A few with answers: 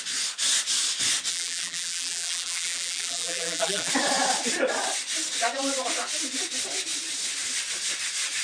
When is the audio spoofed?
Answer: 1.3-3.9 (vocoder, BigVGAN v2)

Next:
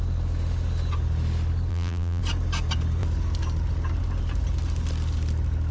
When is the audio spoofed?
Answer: 1.7-2.2 (vocoder, BigVGAN v2)